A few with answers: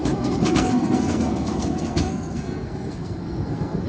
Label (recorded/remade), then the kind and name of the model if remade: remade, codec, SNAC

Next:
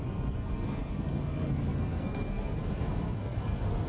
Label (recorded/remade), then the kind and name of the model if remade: remade, codec, SNAC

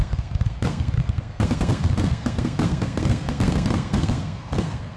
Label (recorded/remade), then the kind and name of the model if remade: remade, codec, SNAC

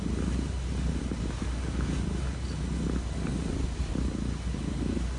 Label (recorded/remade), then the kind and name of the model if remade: recorded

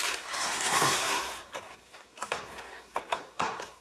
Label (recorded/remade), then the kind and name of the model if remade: remade, codec, SNAC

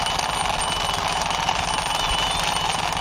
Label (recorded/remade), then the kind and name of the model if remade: recorded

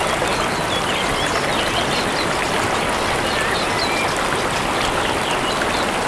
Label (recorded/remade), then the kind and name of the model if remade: recorded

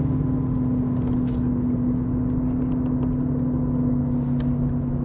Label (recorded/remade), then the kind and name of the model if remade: recorded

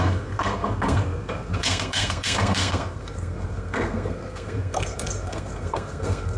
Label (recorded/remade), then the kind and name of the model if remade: remade, codec, SNAC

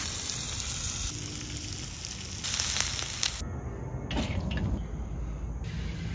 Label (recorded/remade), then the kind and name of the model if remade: recorded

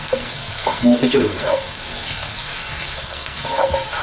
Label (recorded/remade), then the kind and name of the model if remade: remade, codec, SNAC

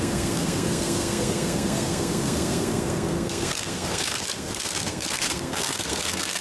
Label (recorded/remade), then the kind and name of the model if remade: remade, codec, SNAC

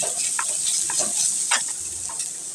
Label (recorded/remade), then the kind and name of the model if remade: recorded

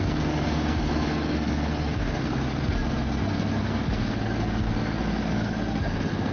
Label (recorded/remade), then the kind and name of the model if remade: remade, codec, SNAC